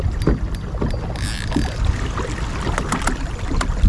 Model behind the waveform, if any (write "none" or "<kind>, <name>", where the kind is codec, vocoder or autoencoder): none